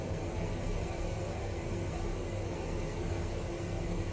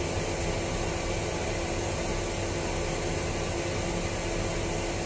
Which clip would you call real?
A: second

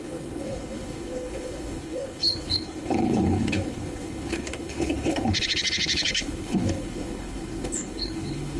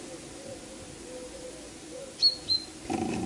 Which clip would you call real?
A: second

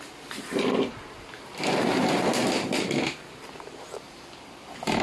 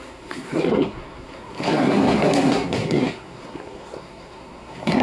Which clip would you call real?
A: first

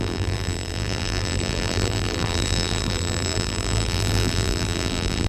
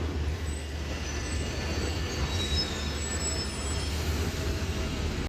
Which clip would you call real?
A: second